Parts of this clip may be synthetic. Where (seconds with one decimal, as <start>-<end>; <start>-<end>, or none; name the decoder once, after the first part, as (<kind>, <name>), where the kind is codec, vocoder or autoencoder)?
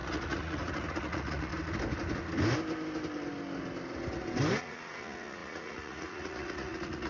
0.0-1.5 (vocoder, Vocos); 4.6-7.1